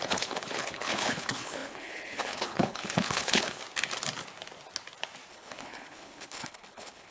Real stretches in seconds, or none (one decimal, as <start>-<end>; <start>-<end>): 3.6-5.3

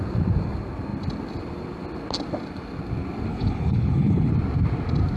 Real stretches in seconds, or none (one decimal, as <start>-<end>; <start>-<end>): 0.0-3.3; 4.3-5.2

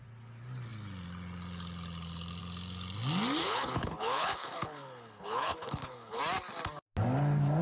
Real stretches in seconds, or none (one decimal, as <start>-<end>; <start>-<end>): 0.0-3.4; 6.2-7.6

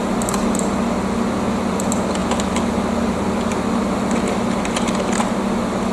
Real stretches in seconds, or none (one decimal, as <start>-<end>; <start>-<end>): 0.0-5.9

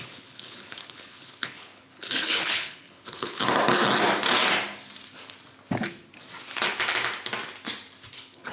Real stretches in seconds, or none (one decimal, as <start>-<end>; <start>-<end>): 3.4-8.1

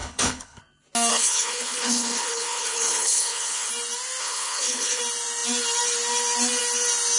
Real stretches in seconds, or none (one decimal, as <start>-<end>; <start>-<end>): 0.6-1.1; 3.7-4.2; 5.0-7.2